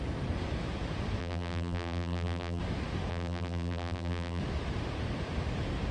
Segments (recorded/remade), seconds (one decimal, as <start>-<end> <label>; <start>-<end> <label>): 0.0-1.2 recorded; 1.2-2.6 remade; 2.6-3.1 recorded; 3.1-4.4 remade; 4.4-5.9 recorded